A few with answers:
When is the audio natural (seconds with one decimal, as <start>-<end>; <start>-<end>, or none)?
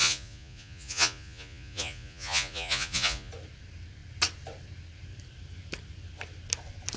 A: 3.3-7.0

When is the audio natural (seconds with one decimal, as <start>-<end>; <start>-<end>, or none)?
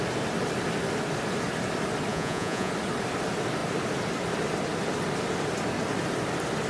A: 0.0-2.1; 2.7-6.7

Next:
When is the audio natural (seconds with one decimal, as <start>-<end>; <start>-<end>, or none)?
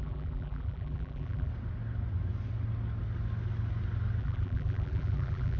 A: 1.5-4.2